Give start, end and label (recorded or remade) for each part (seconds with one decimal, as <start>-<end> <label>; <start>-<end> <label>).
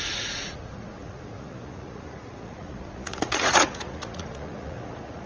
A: 0.0-5.3 remade